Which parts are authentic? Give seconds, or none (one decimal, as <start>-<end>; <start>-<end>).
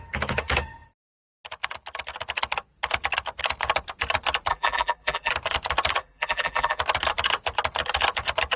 0.0-4.5; 5.3-6.0; 6.8-8.6